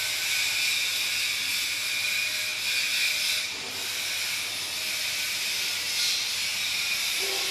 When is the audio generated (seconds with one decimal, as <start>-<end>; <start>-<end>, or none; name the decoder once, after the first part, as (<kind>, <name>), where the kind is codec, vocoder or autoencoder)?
none